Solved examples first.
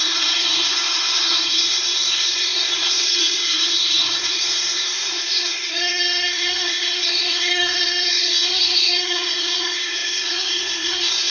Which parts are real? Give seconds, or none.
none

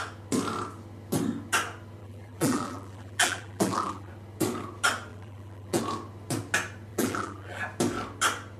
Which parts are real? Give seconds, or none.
0.0-2.0; 4.1-5.1; 5.8-6.9; 7.6-8.6

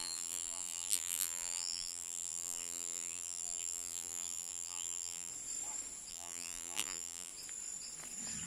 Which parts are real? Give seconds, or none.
5.3-6.1; 7.3-8.5

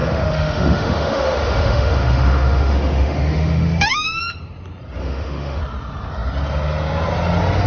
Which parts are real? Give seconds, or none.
4.2-5.0; 5.6-7.7

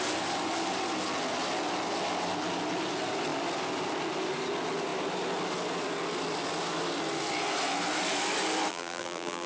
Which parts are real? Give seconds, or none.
0.0-8.7

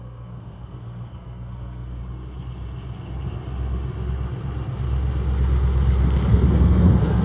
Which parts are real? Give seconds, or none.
2.0-6.3

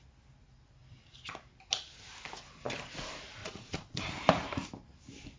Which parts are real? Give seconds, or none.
0.0-3.4; 4.1-5.4

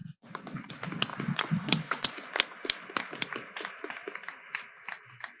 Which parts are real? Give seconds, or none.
0.7-1.1; 2.3-5.4